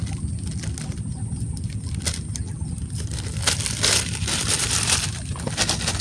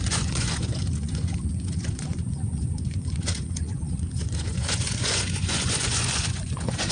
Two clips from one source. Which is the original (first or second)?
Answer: first